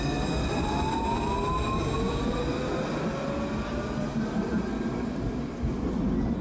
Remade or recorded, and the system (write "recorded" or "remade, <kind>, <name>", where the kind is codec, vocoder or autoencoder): recorded